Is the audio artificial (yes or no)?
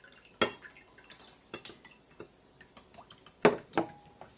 no